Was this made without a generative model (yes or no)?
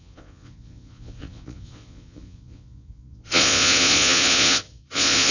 no